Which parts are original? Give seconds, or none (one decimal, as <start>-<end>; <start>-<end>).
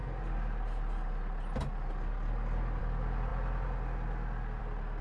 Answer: 0.0-5.0